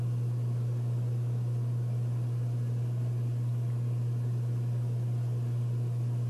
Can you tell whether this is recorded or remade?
recorded